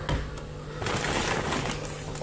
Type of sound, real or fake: real